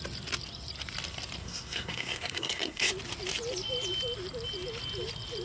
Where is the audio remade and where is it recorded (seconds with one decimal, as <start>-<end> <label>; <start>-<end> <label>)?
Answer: 0.0-1.4 recorded; 1.4-2.9 remade; 2.9-5.4 recorded